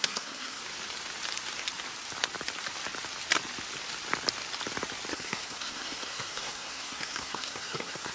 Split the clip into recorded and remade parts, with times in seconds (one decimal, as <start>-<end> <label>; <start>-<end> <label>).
0.0-0.6 remade; 0.6-5.1 recorded; 5.1-8.1 remade